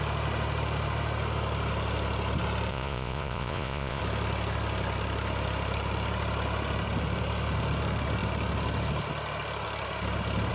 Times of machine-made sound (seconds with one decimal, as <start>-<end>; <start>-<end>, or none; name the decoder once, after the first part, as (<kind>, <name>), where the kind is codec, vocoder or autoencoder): 2.7-4.0 (vocoder, Vocos)